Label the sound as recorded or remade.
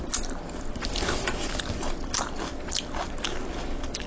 recorded